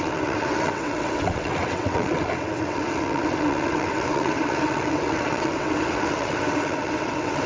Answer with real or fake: fake